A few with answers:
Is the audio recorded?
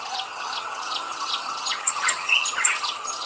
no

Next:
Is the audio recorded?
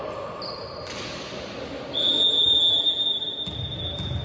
yes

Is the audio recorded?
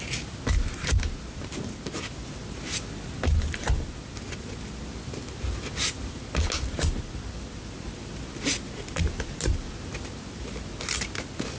yes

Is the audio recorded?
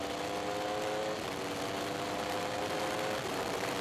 yes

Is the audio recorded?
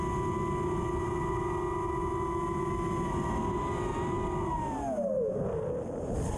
yes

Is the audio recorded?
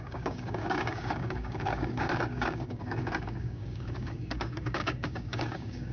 no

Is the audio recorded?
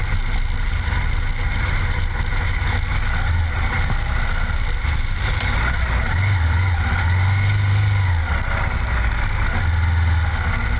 yes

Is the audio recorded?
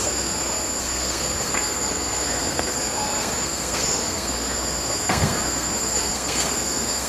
no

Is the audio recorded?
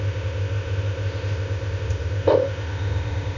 no